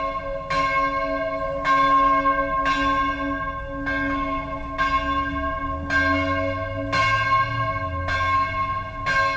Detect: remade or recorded recorded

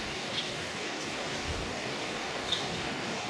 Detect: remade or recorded remade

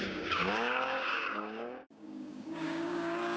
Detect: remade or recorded remade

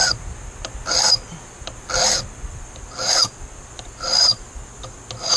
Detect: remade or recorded recorded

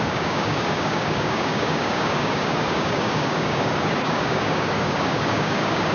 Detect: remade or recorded remade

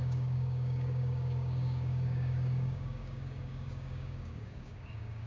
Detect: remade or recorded remade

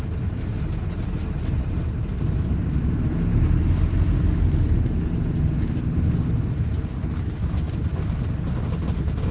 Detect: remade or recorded recorded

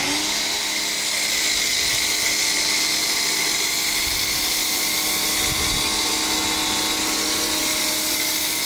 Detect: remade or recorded recorded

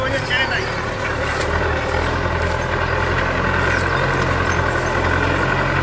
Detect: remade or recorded recorded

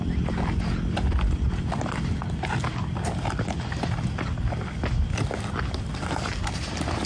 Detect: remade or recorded recorded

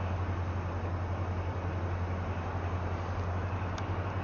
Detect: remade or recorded recorded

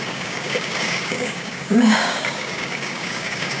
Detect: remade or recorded remade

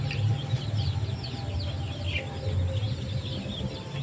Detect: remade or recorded recorded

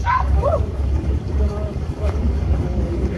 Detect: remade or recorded remade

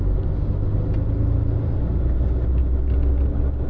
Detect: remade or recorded recorded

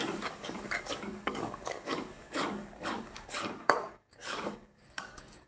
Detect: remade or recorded remade